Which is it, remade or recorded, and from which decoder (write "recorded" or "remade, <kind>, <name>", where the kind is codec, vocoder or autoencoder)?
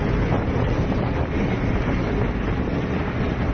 recorded